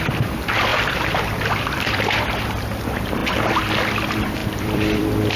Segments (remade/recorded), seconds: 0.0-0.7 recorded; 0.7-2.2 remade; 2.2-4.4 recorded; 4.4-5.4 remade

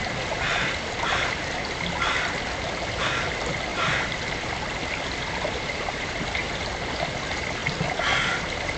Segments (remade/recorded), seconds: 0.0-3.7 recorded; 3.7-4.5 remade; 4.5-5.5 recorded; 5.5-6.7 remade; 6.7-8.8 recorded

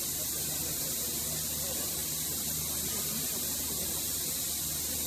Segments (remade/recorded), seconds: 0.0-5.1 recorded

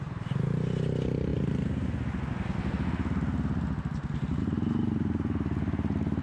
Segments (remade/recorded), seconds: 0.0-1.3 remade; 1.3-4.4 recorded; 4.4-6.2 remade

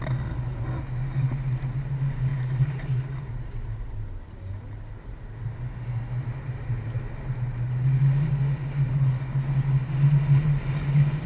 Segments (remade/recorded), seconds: 0.0-2.3 recorded; 2.3-3.5 remade; 3.5-11.3 recorded

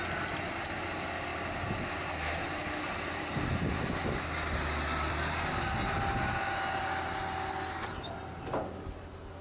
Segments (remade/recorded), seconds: 0.0-9.4 recorded

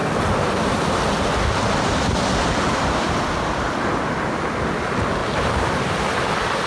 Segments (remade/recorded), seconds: 0.0-5.2 recorded; 5.2-6.3 remade; 6.3-6.7 recorded